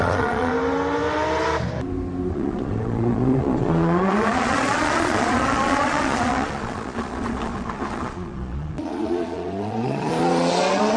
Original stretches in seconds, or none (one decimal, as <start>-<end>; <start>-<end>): 0.5-2.3